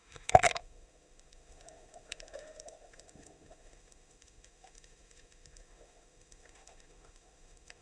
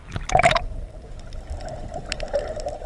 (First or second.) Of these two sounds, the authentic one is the second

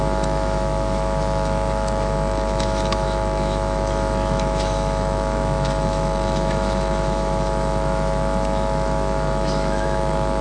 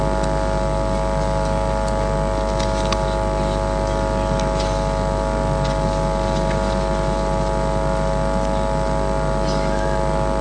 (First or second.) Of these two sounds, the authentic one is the second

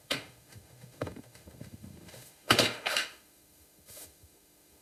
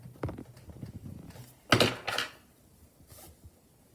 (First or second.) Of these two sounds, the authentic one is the second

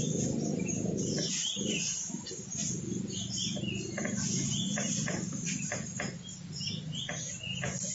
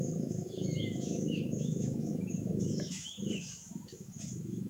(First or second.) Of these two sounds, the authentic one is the first